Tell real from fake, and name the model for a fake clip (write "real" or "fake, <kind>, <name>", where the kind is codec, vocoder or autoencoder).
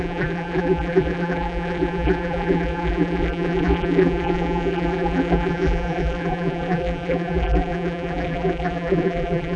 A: fake, vocoder, BigVGAN v2